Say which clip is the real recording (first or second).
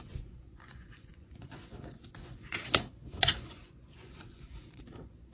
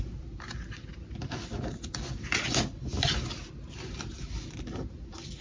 second